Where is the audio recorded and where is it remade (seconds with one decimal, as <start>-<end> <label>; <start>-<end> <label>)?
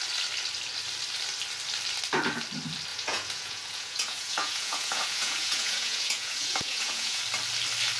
0.0-2.9 recorded; 2.9-7.2 remade; 7.2-8.0 recorded